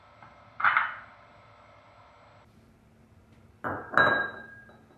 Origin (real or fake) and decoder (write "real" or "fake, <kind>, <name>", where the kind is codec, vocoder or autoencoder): real